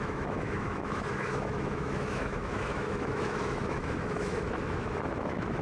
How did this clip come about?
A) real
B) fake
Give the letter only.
B